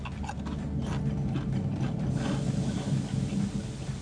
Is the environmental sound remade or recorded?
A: recorded